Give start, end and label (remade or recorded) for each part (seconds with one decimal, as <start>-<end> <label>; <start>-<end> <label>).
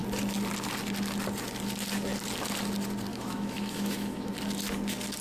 0.0-3.1 recorded; 3.1-4.3 remade; 4.3-5.2 recorded